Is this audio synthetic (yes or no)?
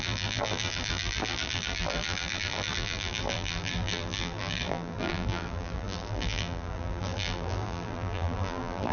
yes